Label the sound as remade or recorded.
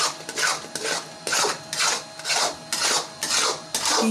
recorded